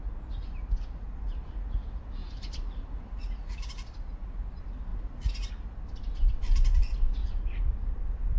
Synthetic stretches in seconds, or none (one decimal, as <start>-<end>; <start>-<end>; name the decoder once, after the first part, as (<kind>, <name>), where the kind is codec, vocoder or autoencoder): 2.2-2.9 (vocoder, BigVGAN v2); 7.2-8.0